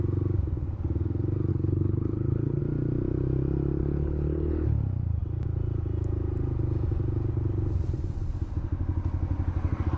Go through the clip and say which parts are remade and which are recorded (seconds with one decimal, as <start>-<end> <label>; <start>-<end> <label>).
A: 0.0-1.5 recorded; 1.5-2.6 remade; 2.6-3.8 recorded; 3.8-4.8 remade; 4.8-10.0 recorded